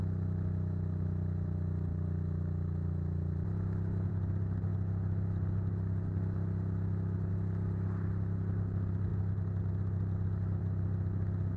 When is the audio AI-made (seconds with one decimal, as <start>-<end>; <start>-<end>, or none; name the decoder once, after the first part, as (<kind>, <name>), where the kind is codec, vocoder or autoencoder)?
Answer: none